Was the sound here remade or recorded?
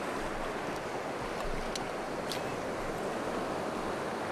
recorded